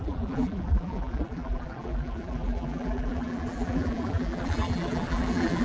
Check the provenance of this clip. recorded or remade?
remade